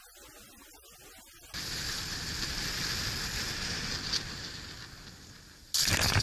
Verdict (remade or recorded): recorded